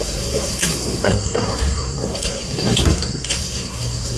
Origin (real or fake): fake